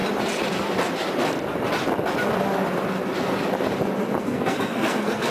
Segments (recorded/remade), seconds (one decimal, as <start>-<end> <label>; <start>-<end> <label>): 0.0-4.2 recorded; 4.2-5.3 remade